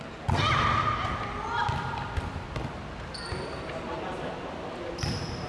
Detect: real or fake real